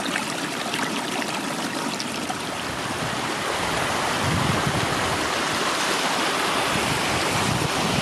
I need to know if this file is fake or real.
real